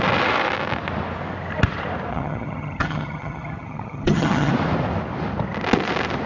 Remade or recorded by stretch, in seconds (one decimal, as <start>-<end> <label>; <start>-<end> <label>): 0.0-2.1 recorded; 2.1-4.5 remade; 4.5-6.3 recorded